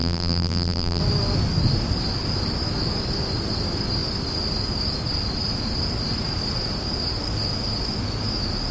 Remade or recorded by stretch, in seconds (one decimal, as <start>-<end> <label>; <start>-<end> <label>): 0.0-1.0 remade; 1.0-8.7 recorded